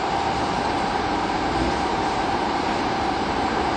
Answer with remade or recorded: remade